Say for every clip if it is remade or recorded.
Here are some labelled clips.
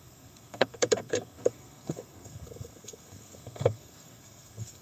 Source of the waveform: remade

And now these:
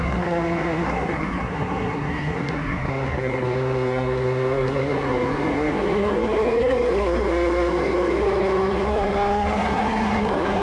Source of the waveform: remade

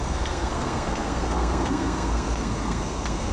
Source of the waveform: remade